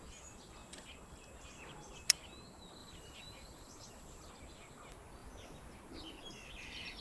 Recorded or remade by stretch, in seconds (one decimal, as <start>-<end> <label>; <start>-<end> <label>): 0.0-2.8 recorded; 2.8-4.3 remade; 4.3-7.0 recorded